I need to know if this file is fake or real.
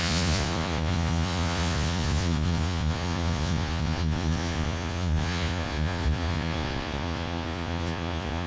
fake